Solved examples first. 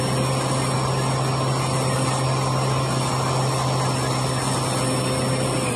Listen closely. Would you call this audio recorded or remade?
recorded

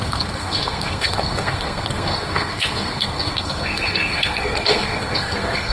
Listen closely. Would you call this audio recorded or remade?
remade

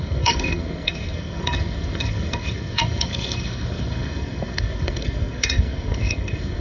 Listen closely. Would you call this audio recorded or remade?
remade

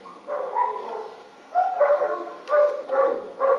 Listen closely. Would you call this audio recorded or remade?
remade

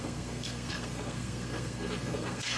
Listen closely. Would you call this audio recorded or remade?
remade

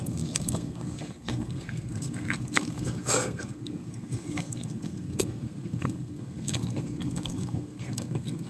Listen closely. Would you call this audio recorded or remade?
remade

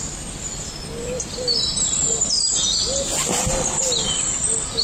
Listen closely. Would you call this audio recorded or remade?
recorded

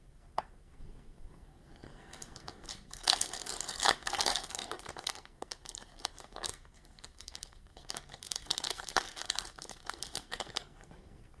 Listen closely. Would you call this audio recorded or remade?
remade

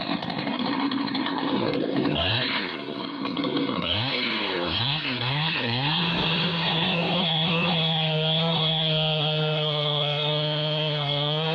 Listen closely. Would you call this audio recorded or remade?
remade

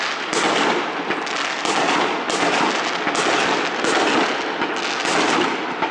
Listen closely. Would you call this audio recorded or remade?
recorded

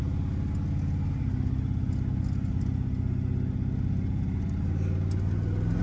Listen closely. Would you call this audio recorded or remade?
recorded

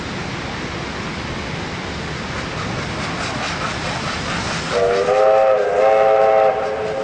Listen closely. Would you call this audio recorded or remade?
recorded